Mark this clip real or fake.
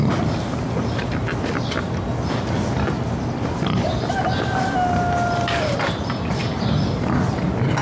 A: real